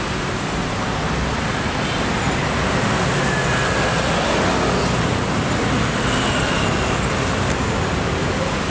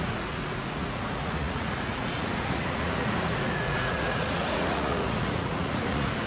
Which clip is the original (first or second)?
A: first